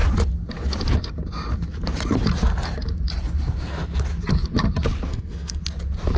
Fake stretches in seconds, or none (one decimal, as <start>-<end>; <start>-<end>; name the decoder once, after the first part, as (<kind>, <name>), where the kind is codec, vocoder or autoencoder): 5.1-5.6 (codec, SNAC)

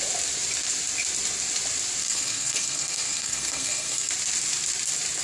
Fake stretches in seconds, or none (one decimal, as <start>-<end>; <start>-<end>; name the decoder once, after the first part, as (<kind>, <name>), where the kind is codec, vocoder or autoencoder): 2.0-4.1 (codec, SNAC)

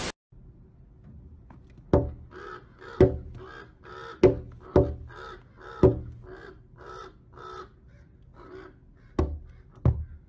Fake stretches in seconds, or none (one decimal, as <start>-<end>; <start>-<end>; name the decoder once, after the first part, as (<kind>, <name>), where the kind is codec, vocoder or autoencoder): none

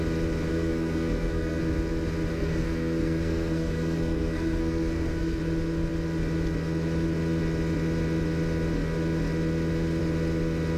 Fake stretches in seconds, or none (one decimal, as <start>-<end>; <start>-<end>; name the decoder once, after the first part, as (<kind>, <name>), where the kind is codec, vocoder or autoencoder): 0.5-1.6 (codec, SNAC); 2.3-5.4

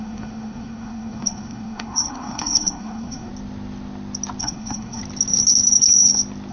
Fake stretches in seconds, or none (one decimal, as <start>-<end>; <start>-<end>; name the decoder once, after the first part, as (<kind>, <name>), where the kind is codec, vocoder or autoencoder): 0.0-3.3 (codec, SNAC); 4.4-5.0

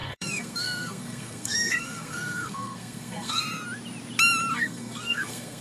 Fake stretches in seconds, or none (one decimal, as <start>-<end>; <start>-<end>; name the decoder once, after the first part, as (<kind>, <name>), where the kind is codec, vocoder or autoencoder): 0.0-3.4 (codec, SNAC); 4.5-5.6

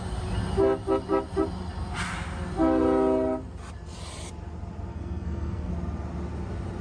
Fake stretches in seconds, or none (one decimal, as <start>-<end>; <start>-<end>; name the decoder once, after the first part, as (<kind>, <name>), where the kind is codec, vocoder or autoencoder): 4.9-5.7 (codec, SNAC)

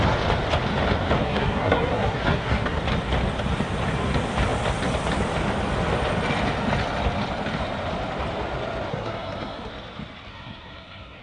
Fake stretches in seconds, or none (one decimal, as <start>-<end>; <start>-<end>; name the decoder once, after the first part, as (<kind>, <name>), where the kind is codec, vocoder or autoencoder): 1.2-2.8 (codec, SNAC); 8.9-9.7; 10.3-11.2